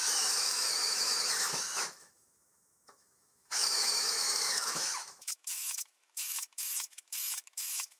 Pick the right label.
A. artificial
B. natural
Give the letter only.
A